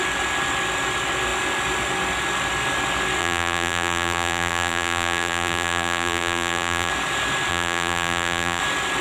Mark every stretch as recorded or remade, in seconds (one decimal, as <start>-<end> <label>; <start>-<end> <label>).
0.0-3.2 recorded; 3.2-6.9 remade; 6.9-7.5 recorded; 7.5-8.6 remade; 8.6-9.0 recorded